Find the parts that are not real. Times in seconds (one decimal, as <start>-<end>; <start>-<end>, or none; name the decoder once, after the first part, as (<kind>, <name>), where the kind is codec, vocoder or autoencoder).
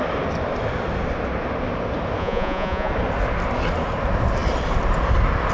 2.2-2.9 (vocoder, Vocos)